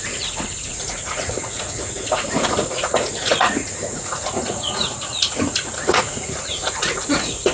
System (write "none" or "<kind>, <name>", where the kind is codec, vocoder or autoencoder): vocoder, Vocos